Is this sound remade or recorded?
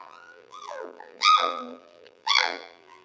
remade